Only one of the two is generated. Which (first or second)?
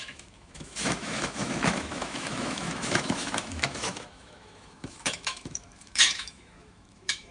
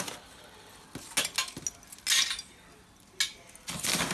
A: first